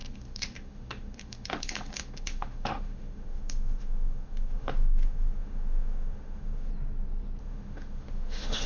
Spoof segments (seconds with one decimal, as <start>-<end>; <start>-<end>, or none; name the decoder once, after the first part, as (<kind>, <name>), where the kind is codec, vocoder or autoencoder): 0.0-6.7 (autoencoder, DAC-VAE); 7.4-8.7